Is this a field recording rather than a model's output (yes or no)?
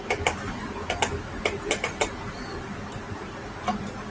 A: no